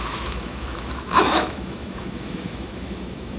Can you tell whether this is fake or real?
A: fake